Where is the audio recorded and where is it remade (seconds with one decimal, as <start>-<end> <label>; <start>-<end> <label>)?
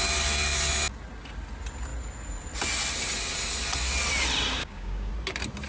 0.0-4.6 recorded; 4.6-5.1 remade; 5.1-5.7 recorded